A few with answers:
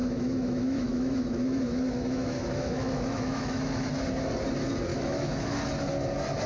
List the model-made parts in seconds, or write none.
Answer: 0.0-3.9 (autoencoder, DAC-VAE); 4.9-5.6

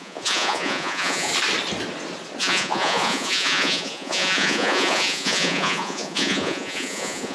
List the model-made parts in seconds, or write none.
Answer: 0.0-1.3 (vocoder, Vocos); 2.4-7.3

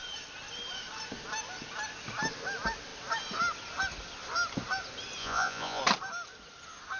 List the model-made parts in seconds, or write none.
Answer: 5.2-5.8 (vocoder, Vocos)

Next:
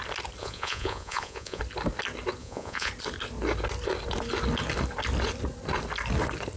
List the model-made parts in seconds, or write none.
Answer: 0.4-1.6 (vocoder, Vocos); 2.4-2.9